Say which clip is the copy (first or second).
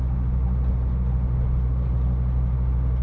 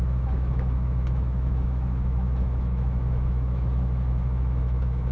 second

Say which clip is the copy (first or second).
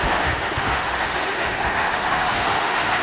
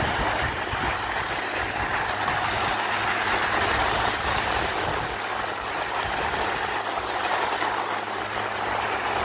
first